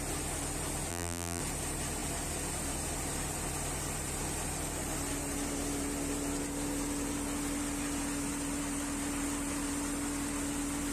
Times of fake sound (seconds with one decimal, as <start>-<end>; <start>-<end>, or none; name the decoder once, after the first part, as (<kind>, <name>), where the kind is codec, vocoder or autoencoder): 0.9-1.4 (vocoder, BigVGAN v2)